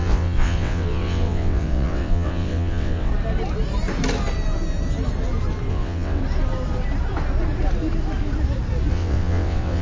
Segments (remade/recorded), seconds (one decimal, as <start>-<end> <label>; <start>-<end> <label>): 0.0-3.1 remade; 3.1-5.7 recorded; 5.7-6.2 remade; 6.2-8.9 recorded; 8.9-9.8 remade